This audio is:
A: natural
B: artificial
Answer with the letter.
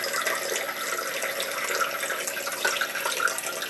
A